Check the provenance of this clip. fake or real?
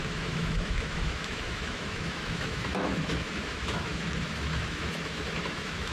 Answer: fake